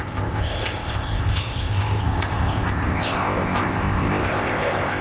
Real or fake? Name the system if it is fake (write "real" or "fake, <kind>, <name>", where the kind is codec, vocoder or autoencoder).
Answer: fake, codec, ZipCodec